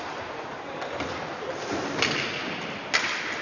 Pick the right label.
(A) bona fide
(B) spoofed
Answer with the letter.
A